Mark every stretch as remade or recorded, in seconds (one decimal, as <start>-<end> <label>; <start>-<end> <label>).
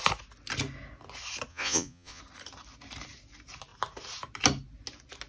0.0-1.5 recorded; 1.5-2.2 remade; 2.2-5.3 recorded